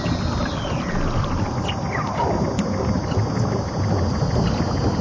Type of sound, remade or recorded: recorded